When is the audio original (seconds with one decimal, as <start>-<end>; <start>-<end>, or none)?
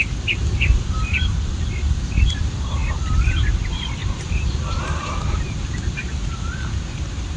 0.0-4.0; 5.2-6.2